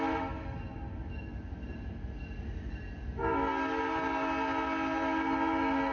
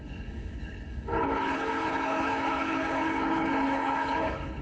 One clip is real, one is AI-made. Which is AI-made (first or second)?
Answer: second